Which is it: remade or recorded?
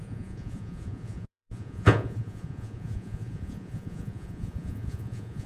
remade